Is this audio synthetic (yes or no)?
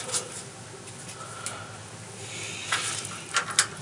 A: no